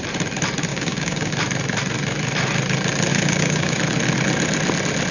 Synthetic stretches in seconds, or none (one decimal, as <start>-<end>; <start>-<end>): 0.7-1.3; 3.1-3.8